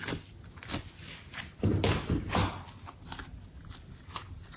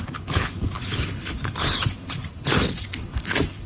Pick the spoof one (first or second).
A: second